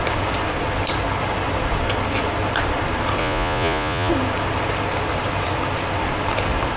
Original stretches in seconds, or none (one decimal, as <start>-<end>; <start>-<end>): 0.0-3.2; 4.1-6.8